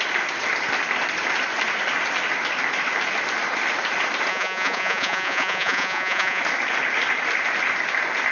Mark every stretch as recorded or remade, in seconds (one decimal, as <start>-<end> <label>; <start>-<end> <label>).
0.0-4.3 recorded; 4.3-6.4 remade; 6.4-8.3 recorded